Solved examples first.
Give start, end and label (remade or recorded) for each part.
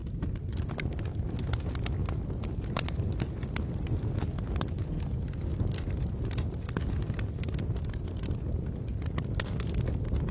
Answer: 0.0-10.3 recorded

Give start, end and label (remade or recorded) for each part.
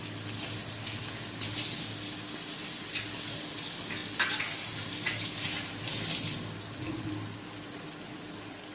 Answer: 0.0-8.7 recorded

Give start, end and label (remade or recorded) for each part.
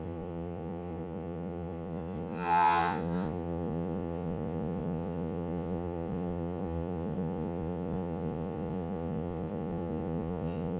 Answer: 0.0-10.8 remade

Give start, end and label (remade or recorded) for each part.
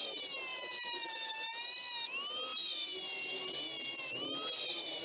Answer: 0.0-0.5 recorded; 0.5-1.3 remade; 1.3-5.0 recorded